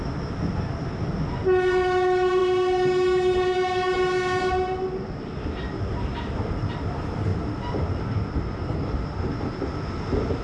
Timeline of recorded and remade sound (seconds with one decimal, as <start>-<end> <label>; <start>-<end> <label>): 0.0-10.4 recorded